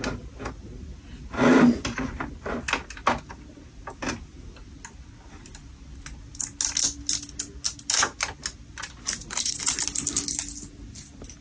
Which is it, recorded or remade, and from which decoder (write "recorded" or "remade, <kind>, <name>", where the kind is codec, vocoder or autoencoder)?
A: recorded